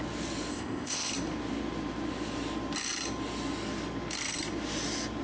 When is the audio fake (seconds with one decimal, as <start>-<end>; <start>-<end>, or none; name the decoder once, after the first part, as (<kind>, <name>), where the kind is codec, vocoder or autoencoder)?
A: 0.5-1.1 (codec, ZipCodec)